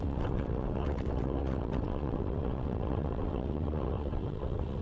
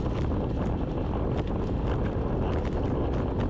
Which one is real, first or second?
second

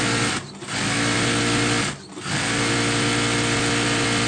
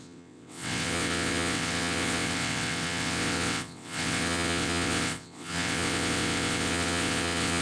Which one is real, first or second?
first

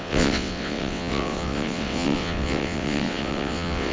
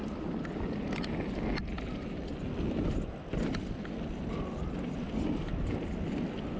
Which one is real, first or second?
second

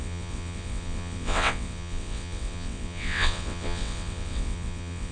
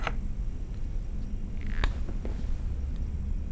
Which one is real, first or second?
second